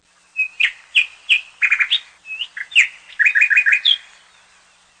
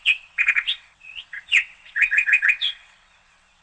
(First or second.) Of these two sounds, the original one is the first